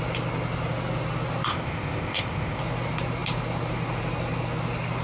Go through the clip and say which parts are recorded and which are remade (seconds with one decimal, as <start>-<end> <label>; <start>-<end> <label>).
0.0-1.5 recorded; 1.5-2.6 remade; 2.6-5.0 recorded